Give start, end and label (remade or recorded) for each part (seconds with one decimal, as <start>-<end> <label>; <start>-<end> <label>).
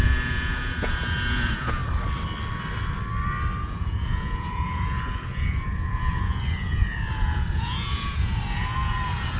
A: 0.0-1.8 remade; 1.8-3.6 recorded; 3.6-9.4 remade